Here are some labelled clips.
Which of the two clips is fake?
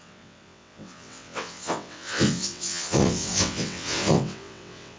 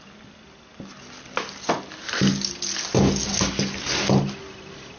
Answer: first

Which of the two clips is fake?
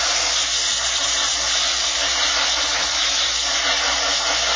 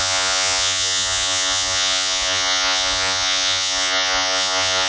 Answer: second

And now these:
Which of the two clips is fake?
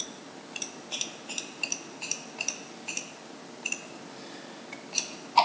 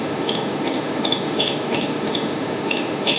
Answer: second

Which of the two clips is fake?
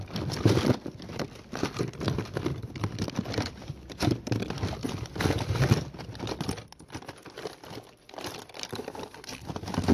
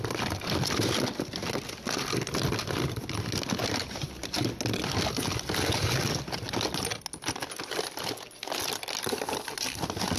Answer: first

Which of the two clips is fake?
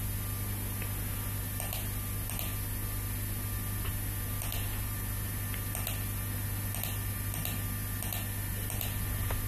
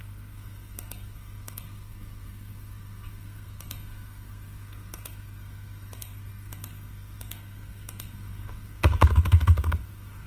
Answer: second